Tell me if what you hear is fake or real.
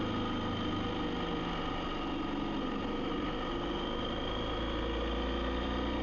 real